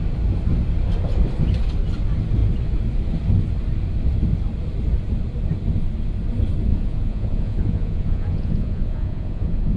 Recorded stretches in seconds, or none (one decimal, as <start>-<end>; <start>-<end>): 0.0-6.7